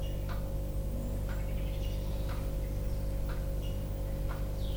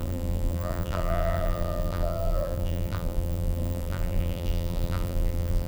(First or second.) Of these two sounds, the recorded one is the first